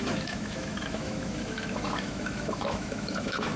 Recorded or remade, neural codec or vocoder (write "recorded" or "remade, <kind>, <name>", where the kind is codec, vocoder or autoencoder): remade, autoencoder, DAC-VAE